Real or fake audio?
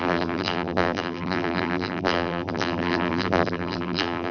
fake